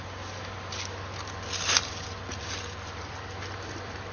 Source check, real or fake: fake